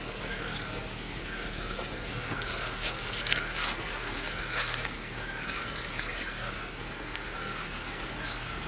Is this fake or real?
fake